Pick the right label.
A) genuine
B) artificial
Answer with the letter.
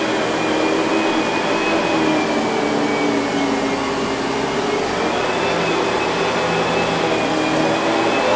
A